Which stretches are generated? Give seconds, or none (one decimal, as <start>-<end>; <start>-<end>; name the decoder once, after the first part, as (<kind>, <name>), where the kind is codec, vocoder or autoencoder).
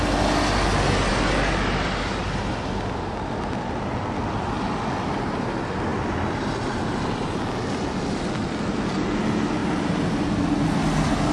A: none